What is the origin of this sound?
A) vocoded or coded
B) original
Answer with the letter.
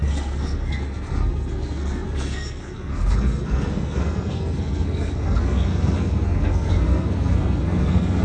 A